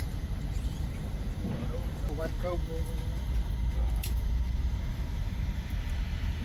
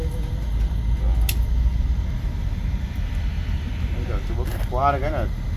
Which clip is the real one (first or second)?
second